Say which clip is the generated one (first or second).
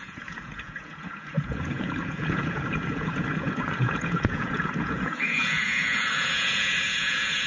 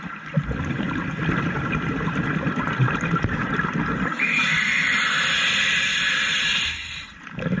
first